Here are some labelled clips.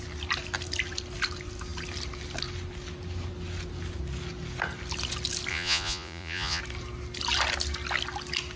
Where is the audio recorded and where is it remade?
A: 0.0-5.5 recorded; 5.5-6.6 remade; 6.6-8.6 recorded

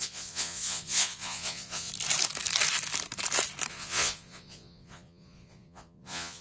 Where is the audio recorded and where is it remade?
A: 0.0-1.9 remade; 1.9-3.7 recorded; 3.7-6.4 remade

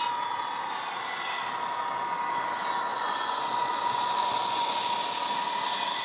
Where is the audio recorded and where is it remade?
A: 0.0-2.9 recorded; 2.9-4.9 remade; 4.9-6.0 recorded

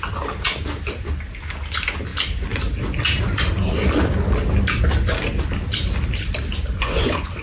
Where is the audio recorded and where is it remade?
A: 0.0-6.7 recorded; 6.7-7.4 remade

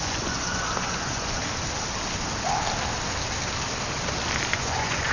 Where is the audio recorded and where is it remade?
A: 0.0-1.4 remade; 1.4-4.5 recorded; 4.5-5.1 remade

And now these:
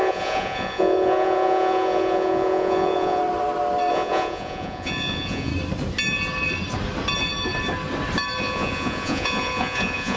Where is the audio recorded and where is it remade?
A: 0.0-3.2 remade; 3.2-3.9 recorded; 3.9-5.5 remade; 5.5-8.4 recorded; 8.4-10.2 remade